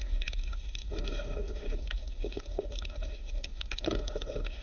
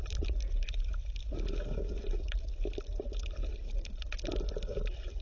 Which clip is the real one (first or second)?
second